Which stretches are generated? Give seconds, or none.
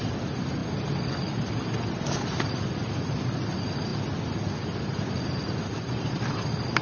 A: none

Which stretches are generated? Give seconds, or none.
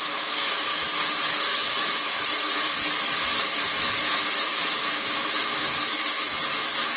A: 0.0-0.7; 1.4-2.8; 3.4-7.0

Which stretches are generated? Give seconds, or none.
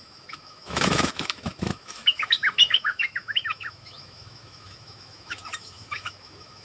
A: 0.0-6.6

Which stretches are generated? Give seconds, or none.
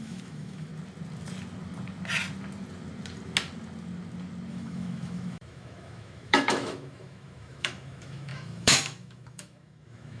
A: 0.0-0.7; 4.5-10.2